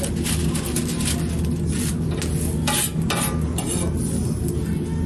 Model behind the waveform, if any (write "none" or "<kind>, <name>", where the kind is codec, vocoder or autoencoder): none